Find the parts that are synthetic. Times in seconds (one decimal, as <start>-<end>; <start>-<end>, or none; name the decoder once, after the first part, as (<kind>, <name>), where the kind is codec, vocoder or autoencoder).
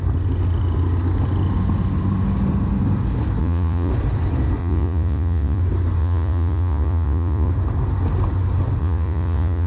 3.4-3.9 (vocoder, Vocos); 4.6-5.6; 6.0-7.5; 8.8-9.7